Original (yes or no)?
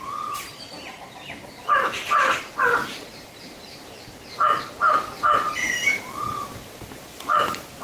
no